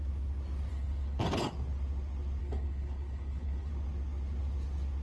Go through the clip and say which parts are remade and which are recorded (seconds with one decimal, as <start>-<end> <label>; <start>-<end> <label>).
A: 0.0-0.7 recorded; 0.7-1.5 remade; 1.5-2.4 recorded; 2.4-3.7 remade; 3.7-5.0 recorded

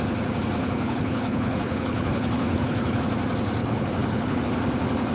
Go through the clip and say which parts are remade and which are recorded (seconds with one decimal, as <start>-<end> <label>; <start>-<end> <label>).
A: 0.0-0.6 recorded; 0.6-3.0 remade; 3.0-3.6 recorded; 3.6-4.4 remade; 4.4-5.1 recorded

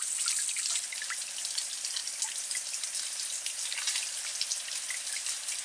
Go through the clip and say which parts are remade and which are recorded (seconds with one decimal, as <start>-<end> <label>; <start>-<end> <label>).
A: 0.0-5.6 recorded

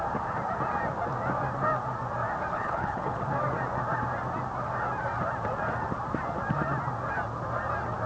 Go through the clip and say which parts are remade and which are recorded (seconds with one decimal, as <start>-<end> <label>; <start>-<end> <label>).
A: 0.0-2.5 recorded; 2.5-3.2 remade; 3.2-8.1 recorded

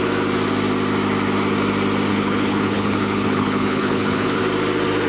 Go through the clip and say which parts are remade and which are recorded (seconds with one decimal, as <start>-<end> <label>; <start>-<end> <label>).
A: 0.0-2.1 recorded; 2.1-4.4 remade; 4.4-5.1 recorded

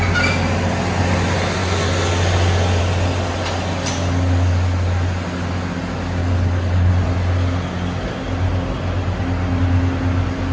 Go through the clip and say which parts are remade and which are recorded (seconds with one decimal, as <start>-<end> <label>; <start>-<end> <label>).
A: 0.0-6.2 recorded; 6.2-6.9 remade; 6.9-10.5 recorded

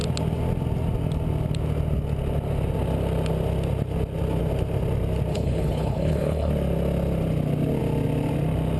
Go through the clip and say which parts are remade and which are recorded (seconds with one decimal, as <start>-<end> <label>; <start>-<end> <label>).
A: 0.0-5.3 recorded; 5.3-6.5 remade; 6.5-8.8 recorded